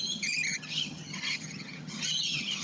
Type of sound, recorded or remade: remade